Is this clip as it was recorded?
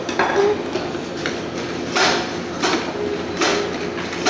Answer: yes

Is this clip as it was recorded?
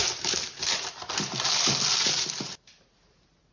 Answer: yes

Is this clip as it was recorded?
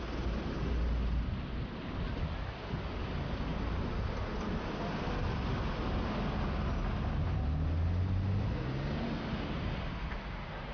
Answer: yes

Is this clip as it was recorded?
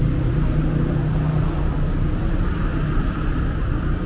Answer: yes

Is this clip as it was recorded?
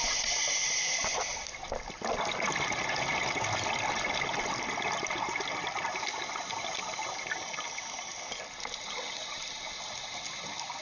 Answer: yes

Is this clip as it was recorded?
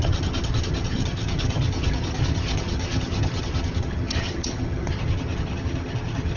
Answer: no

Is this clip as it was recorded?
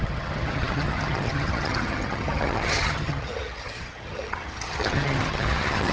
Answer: no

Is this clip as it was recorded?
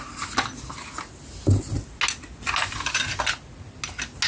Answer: yes